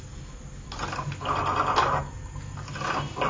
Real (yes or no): yes